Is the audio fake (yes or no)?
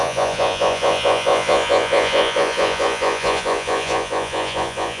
yes